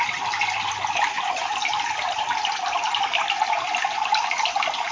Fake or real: real